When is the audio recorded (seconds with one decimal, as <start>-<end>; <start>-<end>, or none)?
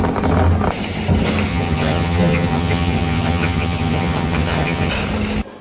0.0-1.5; 4.9-5.6